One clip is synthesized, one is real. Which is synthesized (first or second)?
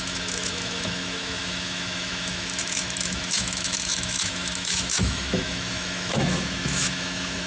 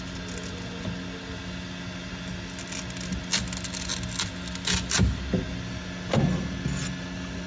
first